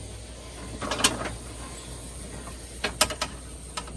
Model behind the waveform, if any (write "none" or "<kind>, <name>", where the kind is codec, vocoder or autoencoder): none